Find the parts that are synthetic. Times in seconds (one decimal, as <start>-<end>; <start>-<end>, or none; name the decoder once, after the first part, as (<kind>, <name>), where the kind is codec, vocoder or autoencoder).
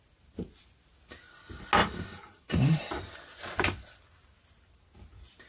1.8-3.2 (vocoder, BigVGAN v2)